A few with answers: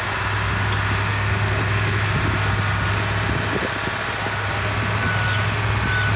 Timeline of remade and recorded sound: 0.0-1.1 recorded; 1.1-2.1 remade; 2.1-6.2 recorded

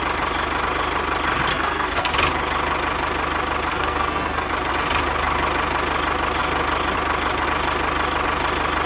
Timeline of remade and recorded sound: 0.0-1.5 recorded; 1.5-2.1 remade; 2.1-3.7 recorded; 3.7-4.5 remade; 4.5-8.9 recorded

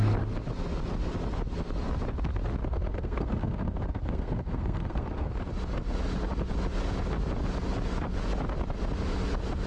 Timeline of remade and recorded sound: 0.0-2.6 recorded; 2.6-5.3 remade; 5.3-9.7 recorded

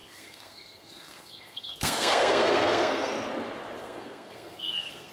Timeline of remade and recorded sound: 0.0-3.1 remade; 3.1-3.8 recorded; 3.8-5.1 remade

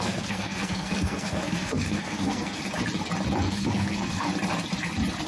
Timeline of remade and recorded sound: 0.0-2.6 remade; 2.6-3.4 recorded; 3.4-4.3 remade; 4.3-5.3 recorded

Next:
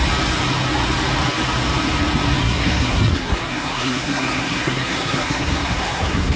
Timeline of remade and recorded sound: 0.0-2.4 recorded; 2.4-6.4 remade

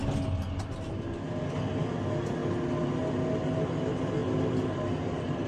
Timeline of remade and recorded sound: 0.0-5.5 recorded

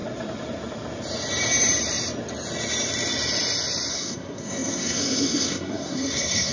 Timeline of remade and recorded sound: 0.0-3.9 recorded; 3.9-6.5 remade